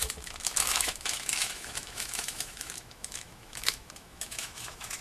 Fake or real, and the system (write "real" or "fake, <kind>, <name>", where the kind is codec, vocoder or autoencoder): fake, autoencoder, DAC-VAE